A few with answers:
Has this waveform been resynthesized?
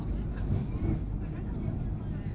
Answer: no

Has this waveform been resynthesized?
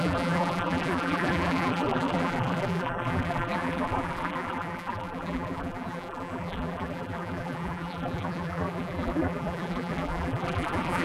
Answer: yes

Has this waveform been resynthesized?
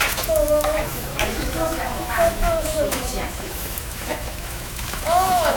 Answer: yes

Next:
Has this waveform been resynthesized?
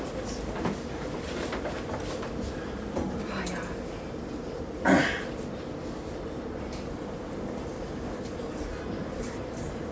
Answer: no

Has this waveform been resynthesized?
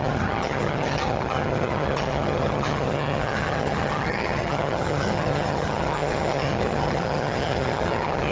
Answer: yes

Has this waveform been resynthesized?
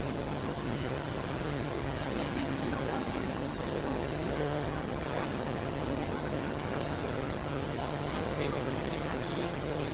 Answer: yes